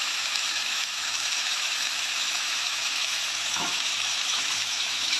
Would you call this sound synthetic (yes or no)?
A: yes